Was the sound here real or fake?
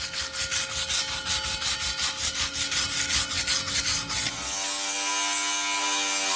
real